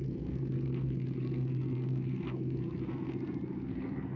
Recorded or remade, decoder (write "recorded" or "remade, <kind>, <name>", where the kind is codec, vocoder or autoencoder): remade, codec, SNAC